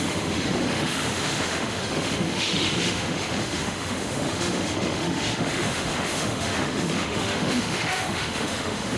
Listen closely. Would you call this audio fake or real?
fake